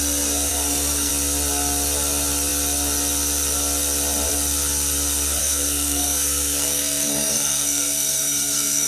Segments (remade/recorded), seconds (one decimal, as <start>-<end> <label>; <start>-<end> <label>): 0.0-0.5 recorded; 0.5-1.1 remade; 1.1-5.4 recorded; 5.4-8.9 remade